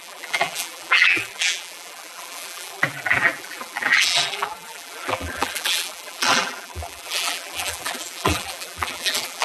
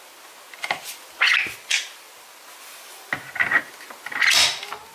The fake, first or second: first